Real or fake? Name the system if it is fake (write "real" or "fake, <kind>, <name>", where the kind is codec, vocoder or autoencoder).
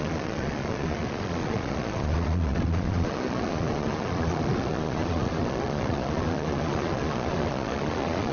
fake, vocoder, Vocos